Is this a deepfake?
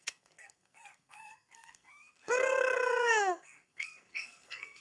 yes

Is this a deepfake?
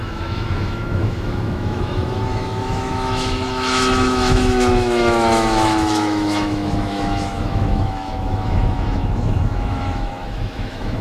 yes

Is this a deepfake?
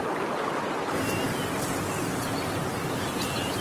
no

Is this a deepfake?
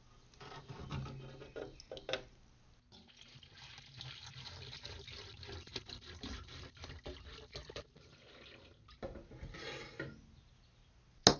no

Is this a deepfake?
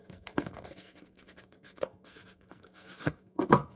yes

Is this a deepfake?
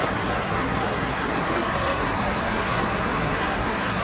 yes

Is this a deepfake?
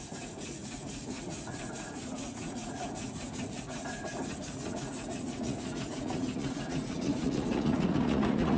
yes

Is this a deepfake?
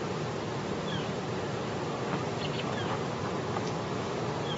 no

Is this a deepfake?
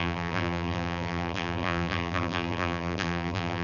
yes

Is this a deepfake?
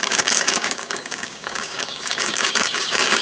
yes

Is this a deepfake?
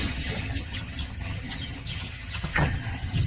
yes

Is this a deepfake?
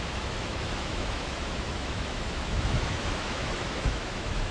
yes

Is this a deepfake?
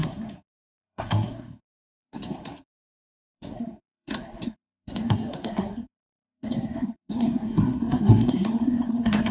yes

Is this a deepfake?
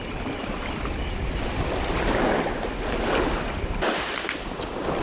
yes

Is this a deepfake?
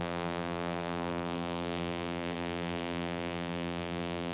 yes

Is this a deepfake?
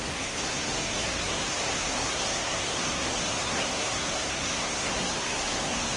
yes